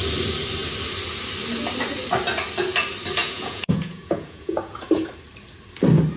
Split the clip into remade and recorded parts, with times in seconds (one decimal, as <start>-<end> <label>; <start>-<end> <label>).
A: 0.0-3.2 recorded; 3.2-5.1 remade; 5.1-6.2 recorded